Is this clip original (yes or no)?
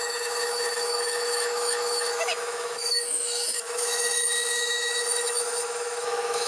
no